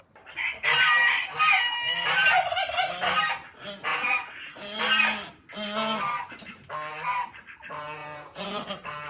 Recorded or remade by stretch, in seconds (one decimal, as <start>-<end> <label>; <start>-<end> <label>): 0.0-3.9 recorded; 3.9-4.8 remade; 4.8-8.0 recorded; 8.0-8.7 remade; 8.7-9.1 recorded